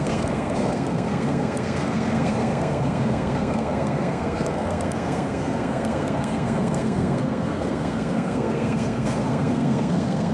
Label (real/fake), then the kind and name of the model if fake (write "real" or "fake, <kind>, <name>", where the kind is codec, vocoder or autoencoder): fake, codec, SNAC